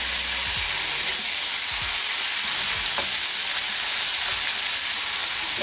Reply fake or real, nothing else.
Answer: real